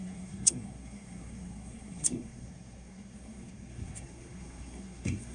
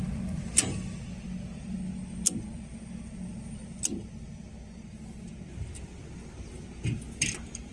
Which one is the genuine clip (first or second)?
second